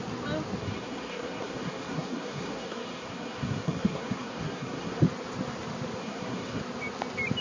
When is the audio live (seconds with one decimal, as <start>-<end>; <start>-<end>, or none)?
0.0-0.6; 5.0-6.0; 6.6-7.4